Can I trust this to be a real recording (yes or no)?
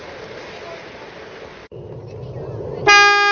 yes